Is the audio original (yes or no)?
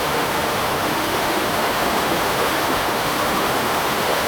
no